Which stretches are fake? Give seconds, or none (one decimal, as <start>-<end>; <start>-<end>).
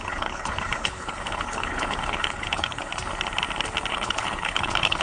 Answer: 0.0-2.9; 3.9-5.0